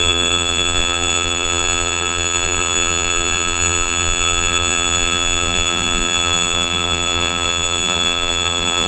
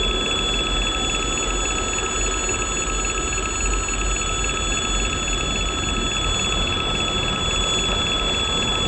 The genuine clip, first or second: second